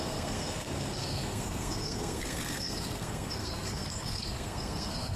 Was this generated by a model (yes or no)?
yes